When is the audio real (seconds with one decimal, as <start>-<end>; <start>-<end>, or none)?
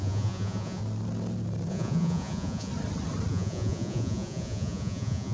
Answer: 0.8-1.7; 2.7-3.3